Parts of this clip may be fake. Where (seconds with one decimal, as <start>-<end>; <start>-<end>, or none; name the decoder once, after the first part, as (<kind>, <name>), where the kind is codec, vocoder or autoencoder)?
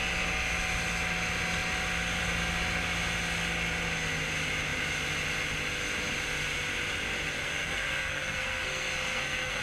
7.4-9.6 (codec, SNAC)